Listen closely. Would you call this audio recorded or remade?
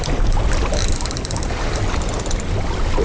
recorded